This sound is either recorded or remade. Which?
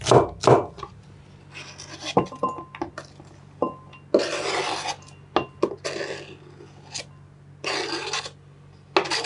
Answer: recorded